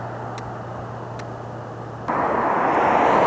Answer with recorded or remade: recorded